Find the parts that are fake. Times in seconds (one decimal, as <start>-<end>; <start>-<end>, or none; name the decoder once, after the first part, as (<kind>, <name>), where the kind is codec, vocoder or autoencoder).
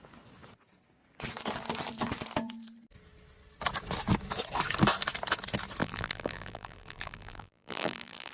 5.8-8.3 (vocoder, BigVGAN v2)